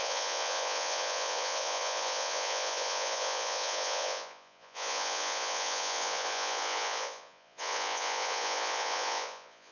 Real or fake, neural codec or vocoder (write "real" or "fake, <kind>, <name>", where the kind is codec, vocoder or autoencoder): fake, vocoder, Vocos